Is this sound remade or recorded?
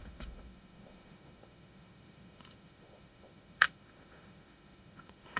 remade